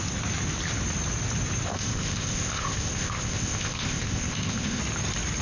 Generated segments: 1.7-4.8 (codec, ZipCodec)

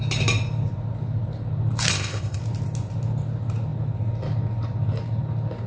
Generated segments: 1.9-2.4 (codec, ZipCodec)